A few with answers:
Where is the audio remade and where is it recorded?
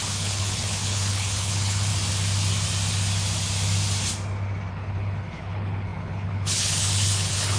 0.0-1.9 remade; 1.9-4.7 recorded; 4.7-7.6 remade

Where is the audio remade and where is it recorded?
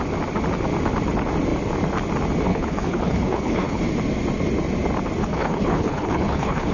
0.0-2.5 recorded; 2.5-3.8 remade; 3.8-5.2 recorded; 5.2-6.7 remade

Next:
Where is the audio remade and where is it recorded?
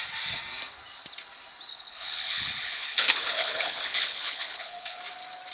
0.0-1.7 recorded; 1.7-5.0 remade; 5.0-5.5 recorded